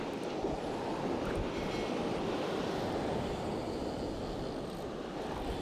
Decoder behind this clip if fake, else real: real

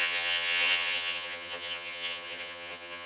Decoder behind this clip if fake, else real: fake, vocoder, HiFi-GAN